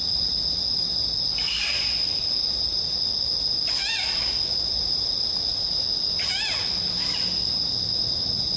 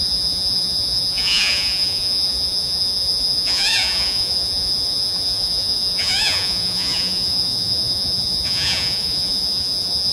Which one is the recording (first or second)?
first